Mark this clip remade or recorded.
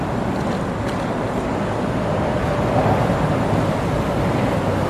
recorded